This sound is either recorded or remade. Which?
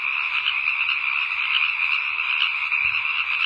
recorded